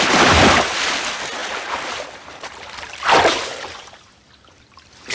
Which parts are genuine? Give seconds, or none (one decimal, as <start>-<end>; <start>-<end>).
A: 0.0-5.1